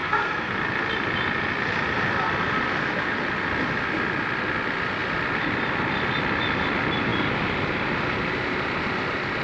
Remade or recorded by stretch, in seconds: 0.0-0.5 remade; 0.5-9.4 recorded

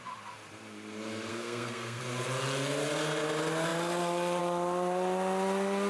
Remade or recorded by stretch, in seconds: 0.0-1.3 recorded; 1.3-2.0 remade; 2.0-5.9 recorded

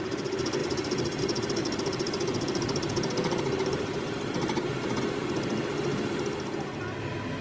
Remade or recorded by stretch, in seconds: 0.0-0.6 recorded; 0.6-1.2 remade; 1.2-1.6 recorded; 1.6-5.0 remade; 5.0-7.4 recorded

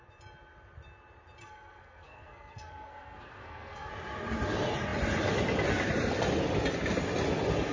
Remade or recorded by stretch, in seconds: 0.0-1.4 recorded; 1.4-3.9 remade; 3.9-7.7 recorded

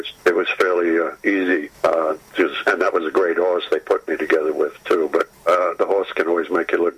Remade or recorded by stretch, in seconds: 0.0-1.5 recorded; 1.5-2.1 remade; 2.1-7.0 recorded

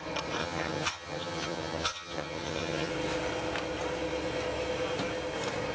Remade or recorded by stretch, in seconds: 0.0-0.4 recorded; 0.4-2.9 remade; 2.9-5.7 recorded